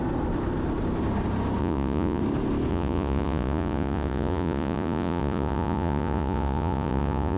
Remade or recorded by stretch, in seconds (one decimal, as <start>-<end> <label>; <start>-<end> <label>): 0.0-1.6 recorded; 1.6-2.2 remade; 2.2-2.7 recorded; 2.7-7.4 remade